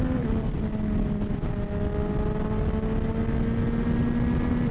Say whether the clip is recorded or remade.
recorded